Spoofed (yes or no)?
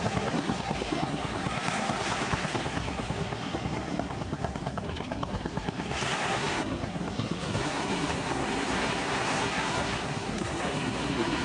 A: yes